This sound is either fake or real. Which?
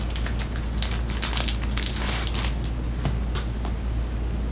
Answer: real